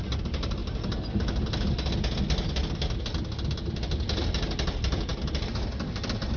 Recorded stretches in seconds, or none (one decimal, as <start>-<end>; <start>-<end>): 0.0-6.4